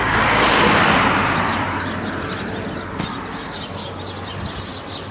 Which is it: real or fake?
real